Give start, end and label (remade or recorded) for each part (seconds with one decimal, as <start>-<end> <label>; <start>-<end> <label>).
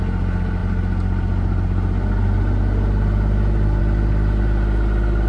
0.0-5.3 recorded